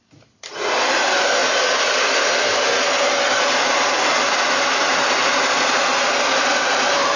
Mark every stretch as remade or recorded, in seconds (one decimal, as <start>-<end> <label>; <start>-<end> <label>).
0.0-7.2 recorded